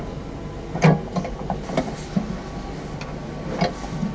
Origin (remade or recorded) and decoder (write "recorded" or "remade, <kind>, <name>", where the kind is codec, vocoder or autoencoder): recorded